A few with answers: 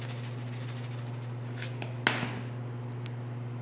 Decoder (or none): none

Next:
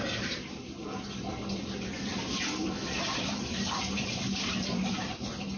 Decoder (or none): vocoder, BigVGAN v2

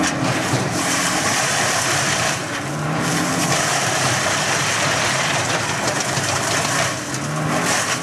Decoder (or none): vocoder, BigVGAN v2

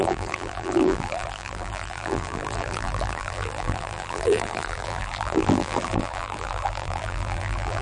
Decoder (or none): vocoder, BigVGAN v2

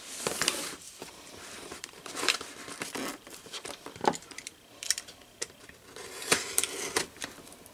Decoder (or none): vocoder, BigVGAN v2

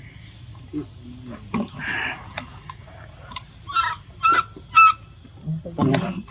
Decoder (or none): none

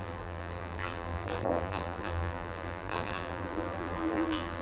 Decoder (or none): vocoder, BigVGAN v2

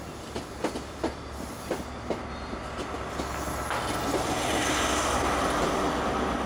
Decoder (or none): none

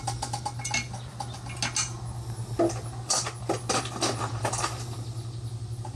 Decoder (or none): none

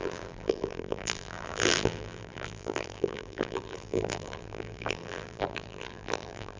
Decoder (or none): vocoder, BigVGAN v2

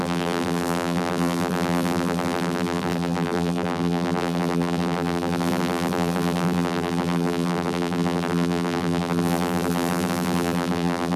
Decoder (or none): vocoder, BigVGAN v2